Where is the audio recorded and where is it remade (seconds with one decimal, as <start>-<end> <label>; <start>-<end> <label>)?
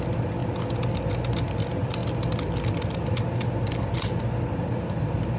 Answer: 0.0-5.4 recorded